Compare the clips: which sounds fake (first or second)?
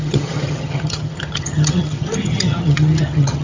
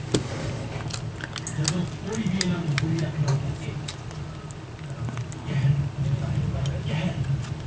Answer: first